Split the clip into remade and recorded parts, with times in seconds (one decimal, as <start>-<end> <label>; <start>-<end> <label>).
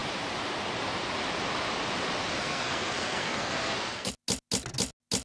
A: 0.0-2.4 recorded; 2.4-4.1 remade; 4.1-5.2 recorded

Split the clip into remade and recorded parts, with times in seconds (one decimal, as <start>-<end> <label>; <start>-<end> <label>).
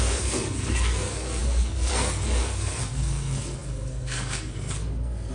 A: 0.0-5.3 remade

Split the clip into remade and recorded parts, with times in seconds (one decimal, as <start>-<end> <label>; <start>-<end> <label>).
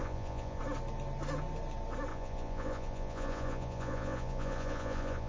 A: 0.0-0.6 remade; 0.6-2.1 recorded; 2.1-5.3 remade